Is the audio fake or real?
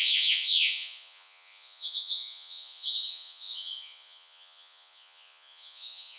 fake